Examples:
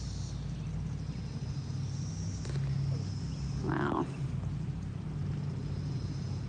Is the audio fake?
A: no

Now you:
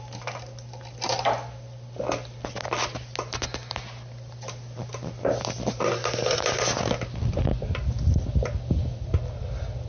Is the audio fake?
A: no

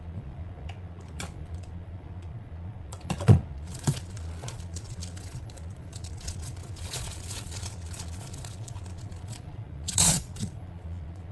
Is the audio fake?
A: yes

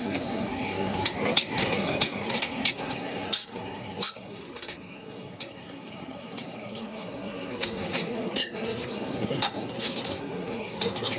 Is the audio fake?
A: yes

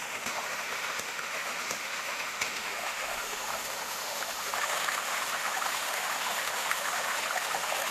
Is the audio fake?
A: yes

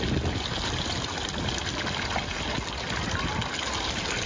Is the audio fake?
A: no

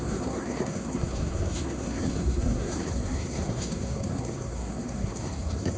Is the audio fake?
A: yes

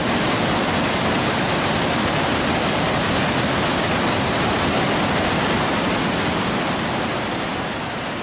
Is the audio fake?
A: no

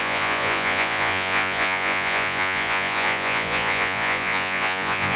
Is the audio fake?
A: yes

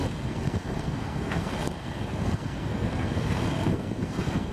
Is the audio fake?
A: yes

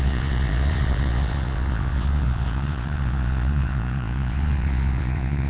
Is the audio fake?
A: yes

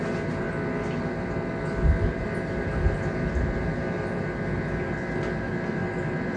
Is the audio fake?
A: no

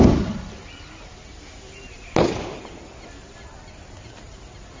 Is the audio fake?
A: no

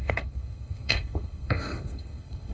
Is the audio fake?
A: yes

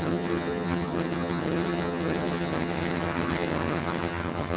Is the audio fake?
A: yes